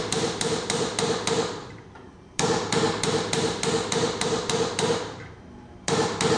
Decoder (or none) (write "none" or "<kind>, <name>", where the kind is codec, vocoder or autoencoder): vocoder, BigVGAN v2